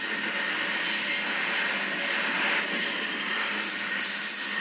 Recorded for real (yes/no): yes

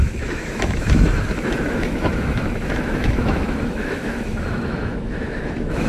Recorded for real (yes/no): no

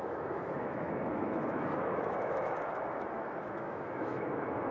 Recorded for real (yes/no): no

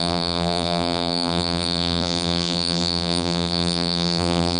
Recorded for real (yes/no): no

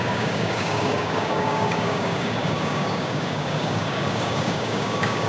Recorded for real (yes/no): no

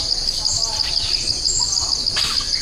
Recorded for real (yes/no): yes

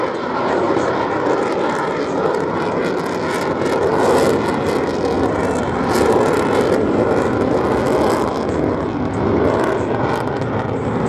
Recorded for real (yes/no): yes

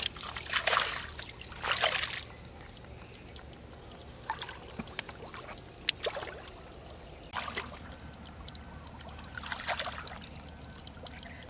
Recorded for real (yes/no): yes